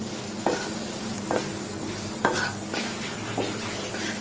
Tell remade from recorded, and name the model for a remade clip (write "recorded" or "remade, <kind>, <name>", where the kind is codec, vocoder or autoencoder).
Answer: recorded